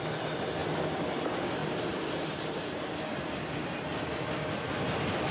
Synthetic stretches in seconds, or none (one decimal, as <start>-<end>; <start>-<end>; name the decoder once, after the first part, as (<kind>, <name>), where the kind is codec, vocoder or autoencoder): 1.6-3.2 (vocoder, BigVGAN v2)